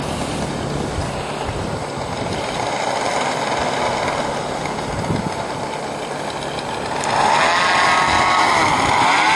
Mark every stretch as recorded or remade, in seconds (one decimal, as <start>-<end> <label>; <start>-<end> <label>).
0.0-1.8 recorded; 1.8-2.6 remade; 2.6-9.4 recorded